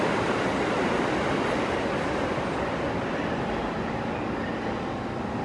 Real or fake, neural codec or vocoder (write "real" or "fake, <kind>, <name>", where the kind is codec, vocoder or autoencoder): real